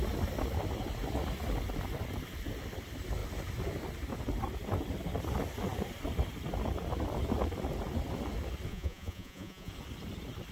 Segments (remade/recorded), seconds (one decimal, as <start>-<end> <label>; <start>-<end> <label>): 0.0-8.7 recorded; 8.7-9.7 remade; 9.7-10.5 recorded